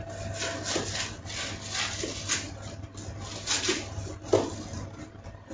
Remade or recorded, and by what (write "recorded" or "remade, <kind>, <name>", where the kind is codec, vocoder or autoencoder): recorded